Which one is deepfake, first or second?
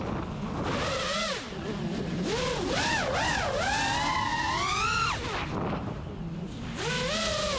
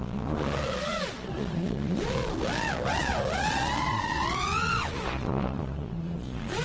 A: second